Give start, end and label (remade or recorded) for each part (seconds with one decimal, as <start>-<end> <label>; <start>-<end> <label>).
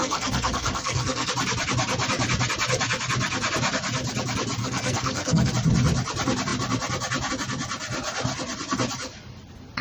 0.0-1.3 remade; 1.3-4.6 recorded; 4.6-5.5 remade; 5.5-9.8 recorded